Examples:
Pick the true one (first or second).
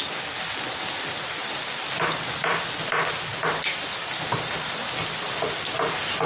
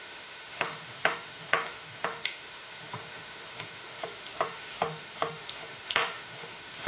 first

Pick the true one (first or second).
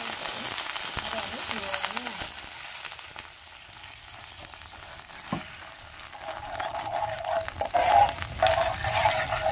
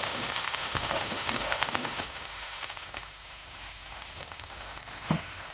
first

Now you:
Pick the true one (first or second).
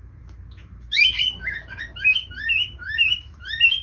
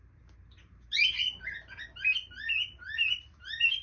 second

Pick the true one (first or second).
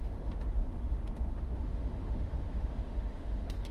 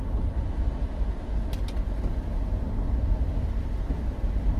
second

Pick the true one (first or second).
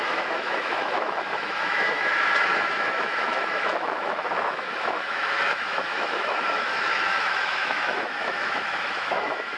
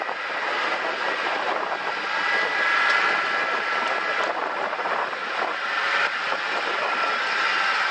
second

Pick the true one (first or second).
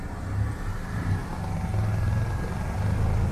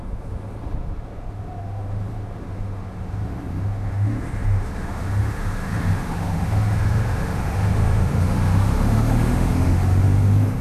first